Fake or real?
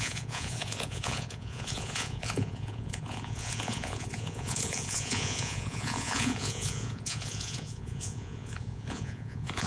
fake